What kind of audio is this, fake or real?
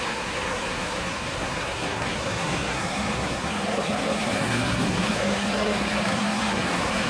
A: fake